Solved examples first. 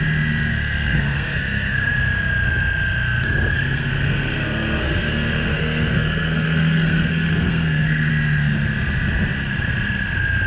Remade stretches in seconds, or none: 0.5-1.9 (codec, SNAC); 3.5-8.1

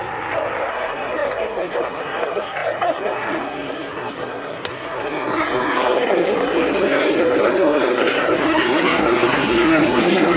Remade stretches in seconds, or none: 0.7-10.4 (codec, SNAC)

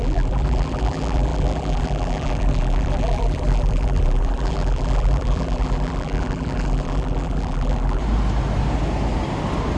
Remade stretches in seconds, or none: 0.0-8.0 (vocoder, BigVGAN v2)

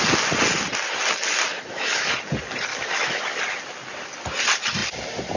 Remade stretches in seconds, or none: 1.5-2.1 (autoencoder, DAC-VAE); 2.7-3.4

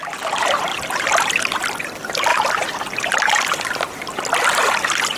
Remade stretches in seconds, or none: 2.3-3.4 (vocoder, BigVGAN v2)

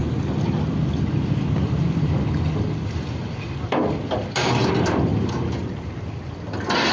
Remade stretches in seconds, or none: none

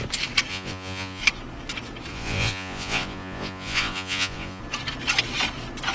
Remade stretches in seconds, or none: 0.5-1.2 (vocoder, Vocos); 2.1-4.6